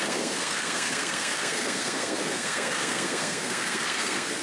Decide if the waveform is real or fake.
fake